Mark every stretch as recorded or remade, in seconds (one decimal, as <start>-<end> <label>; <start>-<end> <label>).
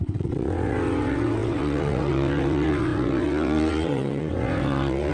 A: 0.0-5.1 remade